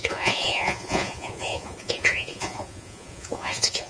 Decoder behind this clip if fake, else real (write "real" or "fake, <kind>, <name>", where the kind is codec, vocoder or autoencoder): fake, vocoder, Vocos